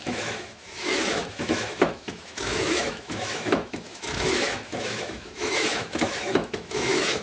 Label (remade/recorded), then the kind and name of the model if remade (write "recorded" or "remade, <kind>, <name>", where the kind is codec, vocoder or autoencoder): remade, autoencoder, DAC-VAE